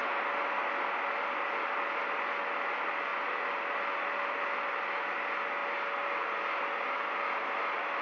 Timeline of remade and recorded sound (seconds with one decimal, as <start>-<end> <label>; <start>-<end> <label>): 0.0-8.0 recorded